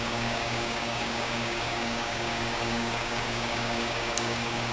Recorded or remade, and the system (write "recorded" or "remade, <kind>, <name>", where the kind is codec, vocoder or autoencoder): remade, codec, DAC